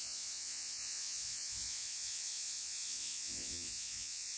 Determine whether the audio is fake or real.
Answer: fake